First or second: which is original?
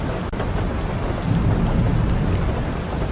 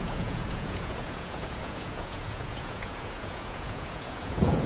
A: first